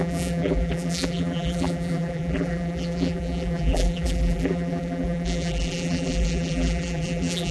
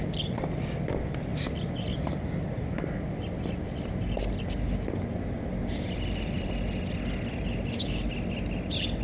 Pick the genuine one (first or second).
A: second